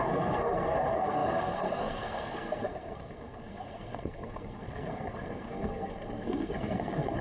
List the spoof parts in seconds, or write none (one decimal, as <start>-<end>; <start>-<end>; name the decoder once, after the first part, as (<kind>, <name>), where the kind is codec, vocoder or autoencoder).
0.0-7.2 (codec, SNAC)